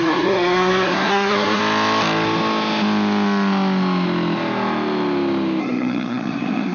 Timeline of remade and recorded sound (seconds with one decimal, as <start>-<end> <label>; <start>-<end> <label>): 0.0-1.6 remade; 1.6-5.6 recorded; 5.6-6.7 remade